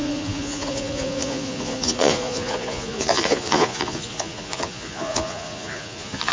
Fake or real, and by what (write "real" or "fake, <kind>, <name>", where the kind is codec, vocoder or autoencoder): fake, vocoder, Vocos